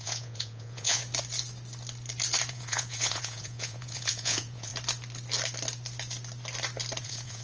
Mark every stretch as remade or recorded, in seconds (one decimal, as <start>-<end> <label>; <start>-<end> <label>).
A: 0.0-1.0 remade; 1.0-2.5 recorded; 2.5-4.7 remade; 4.7-7.0 recorded; 7.0-7.4 remade